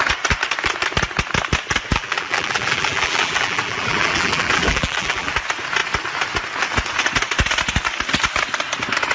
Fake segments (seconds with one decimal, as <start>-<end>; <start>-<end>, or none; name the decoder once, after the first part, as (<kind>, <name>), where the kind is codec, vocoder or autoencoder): 1.9-5.3 (vocoder, BigVGAN v2)

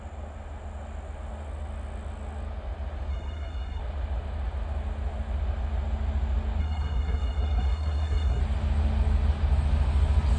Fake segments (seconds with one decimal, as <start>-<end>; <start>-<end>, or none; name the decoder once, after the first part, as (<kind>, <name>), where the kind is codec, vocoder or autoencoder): 3.1-3.8 (codec, SNAC); 6.6-8.4

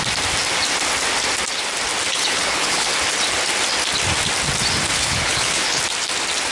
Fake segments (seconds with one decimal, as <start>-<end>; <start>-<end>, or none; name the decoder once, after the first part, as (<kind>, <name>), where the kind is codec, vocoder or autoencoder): 2.1-2.9 (codec, HILCodec); 4.9-5.8

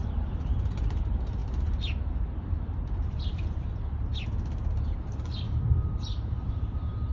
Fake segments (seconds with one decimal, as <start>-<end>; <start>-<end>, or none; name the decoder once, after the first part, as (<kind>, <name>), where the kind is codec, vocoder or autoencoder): 0.0-4.1 (vocoder, BigVGAN v2); 4.7-7.1

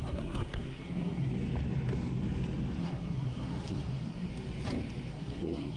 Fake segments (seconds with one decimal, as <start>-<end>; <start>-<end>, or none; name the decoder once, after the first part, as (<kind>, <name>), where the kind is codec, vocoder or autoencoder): 0.0-1.3 (codec, SNAC); 2.8-4.3; 5.1-5.8

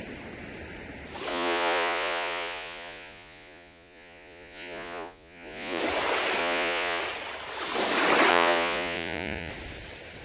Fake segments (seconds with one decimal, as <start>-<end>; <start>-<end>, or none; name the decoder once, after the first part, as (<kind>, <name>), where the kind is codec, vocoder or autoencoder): 1.3-5.8 (vocoder, Vocos); 6.4-7.0; 8.3-9.5